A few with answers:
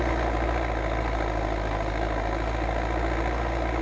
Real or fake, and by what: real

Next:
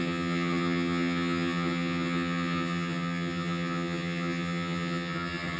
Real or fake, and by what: fake, vocoder, HiFi-GAN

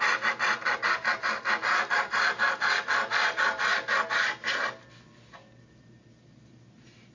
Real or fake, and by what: real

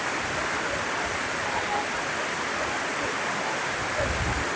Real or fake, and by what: real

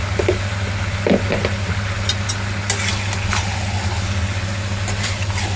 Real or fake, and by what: real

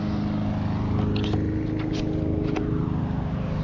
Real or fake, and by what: real